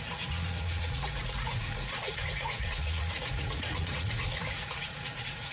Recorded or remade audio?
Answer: remade